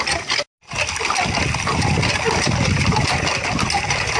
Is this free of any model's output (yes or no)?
yes